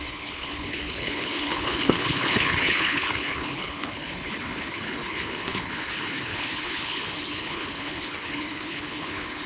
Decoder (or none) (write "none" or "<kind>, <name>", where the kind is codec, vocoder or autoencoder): codec, HILCodec